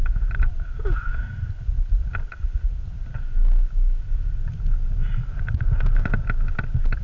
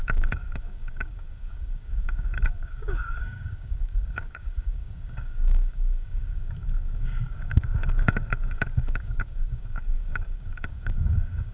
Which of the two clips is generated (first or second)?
second